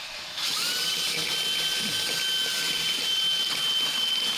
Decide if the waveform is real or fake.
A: real